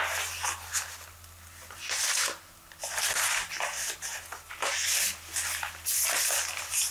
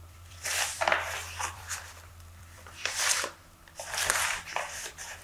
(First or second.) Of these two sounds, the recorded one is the first